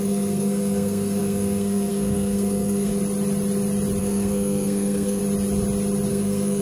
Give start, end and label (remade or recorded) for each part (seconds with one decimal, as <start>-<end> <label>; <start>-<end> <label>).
0.0-2.9 remade; 2.9-4.0 recorded; 4.0-5.2 remade; 5.2-6.1 recorded; 6.1-6.6 remade